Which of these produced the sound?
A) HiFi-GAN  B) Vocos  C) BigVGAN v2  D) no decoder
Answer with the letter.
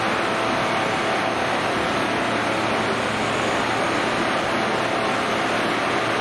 D